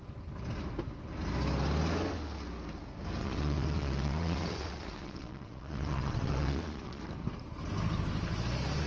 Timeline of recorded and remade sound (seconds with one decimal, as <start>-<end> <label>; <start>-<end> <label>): 0.0-3.2 recorded; 3.2-7.0 remade; 7.0-8.9 recorded

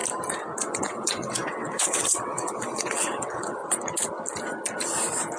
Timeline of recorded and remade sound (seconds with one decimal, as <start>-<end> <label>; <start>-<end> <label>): 0.0-0.6 recorded; 0.6-3.6 remade; 3.6-5.4 recorded

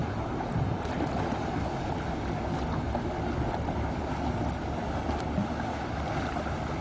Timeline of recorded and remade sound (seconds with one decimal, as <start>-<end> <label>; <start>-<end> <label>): 0.0-6.8 recorded

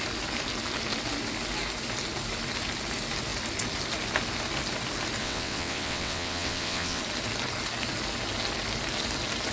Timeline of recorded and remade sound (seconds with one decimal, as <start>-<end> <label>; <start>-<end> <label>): 0.0-5.2 recorded; 5.2-7.0 remade; 7.0-9.5 recorded